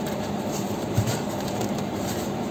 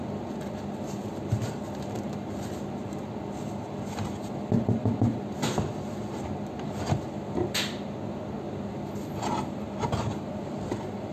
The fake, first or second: first